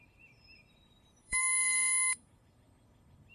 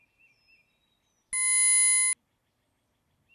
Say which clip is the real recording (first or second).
second